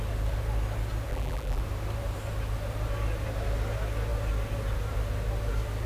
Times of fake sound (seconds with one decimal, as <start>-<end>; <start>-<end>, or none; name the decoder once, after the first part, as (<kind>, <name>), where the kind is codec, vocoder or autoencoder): 1.1-1.6 (vocoder, BigVGAN v2)